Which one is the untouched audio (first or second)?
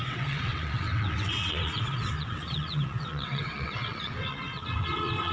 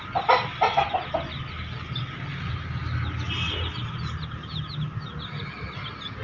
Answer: second